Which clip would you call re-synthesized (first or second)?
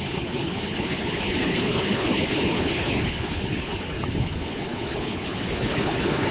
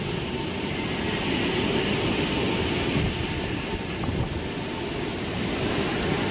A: first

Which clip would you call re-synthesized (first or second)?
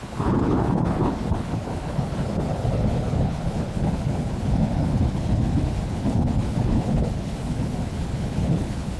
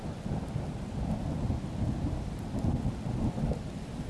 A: first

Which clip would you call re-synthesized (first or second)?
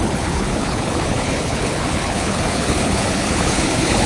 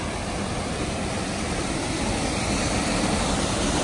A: first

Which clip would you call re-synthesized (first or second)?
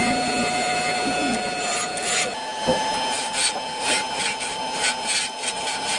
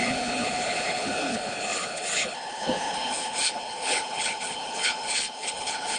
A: second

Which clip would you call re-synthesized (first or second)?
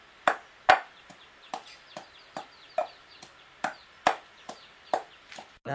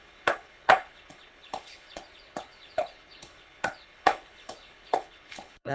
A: second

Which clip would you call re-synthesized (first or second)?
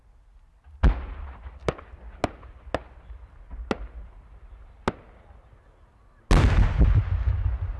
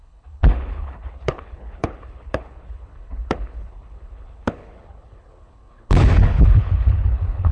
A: second